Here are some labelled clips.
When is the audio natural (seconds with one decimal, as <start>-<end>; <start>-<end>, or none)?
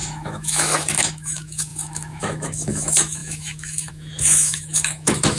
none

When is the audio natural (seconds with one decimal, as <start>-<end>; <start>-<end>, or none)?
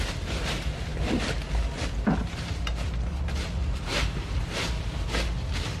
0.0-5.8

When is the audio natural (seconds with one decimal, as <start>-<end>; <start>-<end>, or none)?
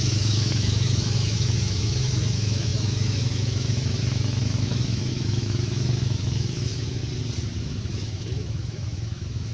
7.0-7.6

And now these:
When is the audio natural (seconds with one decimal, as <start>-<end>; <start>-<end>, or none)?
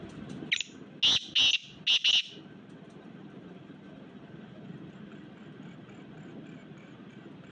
0.0-7.5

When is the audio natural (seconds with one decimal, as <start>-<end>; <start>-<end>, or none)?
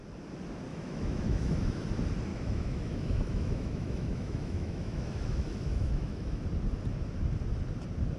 0.0-0.7; 1.8-2.3; 6.4-8.2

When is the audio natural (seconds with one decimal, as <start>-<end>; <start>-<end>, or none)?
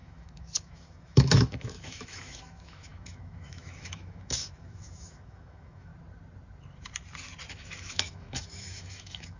5.9-7.5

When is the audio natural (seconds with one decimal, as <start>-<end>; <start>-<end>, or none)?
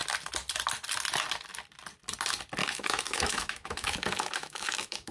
0.0-2.6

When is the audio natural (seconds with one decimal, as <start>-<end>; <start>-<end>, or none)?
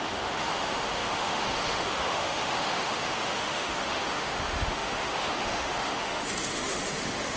none